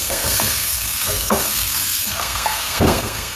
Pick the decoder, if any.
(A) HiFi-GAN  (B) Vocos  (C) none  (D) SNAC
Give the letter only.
D